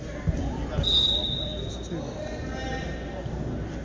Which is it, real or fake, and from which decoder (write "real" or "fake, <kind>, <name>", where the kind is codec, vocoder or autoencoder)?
real